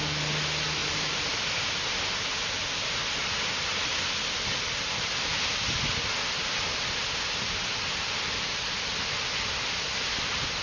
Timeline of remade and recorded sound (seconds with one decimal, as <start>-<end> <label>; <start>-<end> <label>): 0.0-10.6 recorded